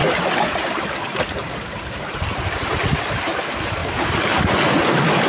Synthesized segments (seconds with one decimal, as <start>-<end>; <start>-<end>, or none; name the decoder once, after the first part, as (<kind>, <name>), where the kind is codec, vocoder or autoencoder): 0.0-2.3 (vocoder, BigVGAN v2); 3.8-4.5